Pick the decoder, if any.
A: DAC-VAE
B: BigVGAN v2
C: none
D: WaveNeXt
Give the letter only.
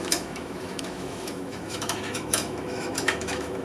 A